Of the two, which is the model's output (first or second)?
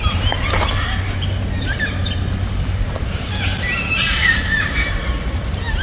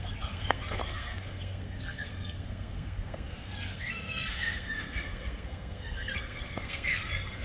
second